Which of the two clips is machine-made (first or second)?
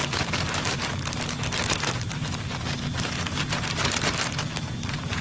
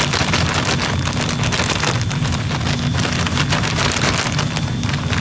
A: first